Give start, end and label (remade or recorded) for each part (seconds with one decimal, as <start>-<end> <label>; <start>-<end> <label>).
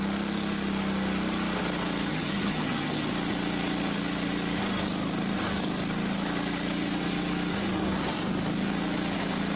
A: 0.0-2.1 recorded; 2.1-3.1 remade; 3.1-9.6 recorded